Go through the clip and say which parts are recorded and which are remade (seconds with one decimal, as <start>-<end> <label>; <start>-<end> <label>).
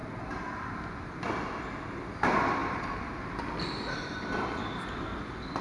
0.0-2.6 recorded; 2.6-4.6 remade; 4.6-5.6 recorded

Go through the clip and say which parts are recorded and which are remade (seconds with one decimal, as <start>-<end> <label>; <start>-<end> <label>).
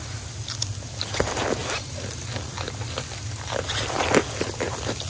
0.0-1.6 recorded; 1.6-4.0 remade; 4.0-5.1 recorded